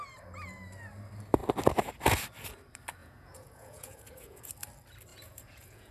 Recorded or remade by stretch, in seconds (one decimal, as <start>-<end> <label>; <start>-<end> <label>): 0.0-3.0 recorded; 3.0-4.5 remade; 4.5-5.1 recorded; 5.1-5.9 remade